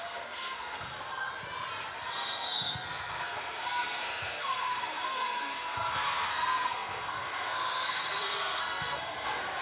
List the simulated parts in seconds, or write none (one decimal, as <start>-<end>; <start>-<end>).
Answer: 0.0-1.3; 2.1-9.6